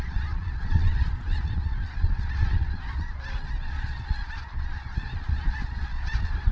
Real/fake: fake